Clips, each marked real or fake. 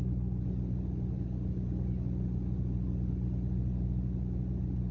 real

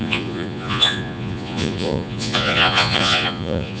fake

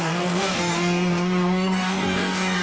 fake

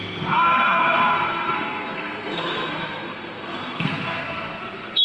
fake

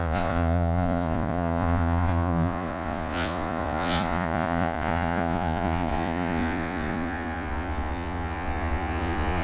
fake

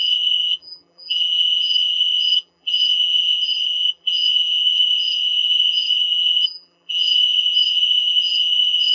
fake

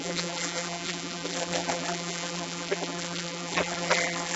fake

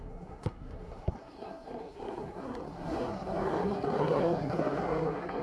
fake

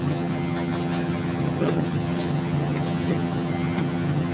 fake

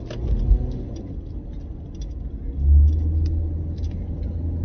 real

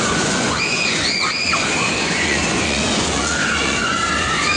fake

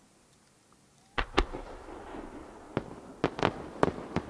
real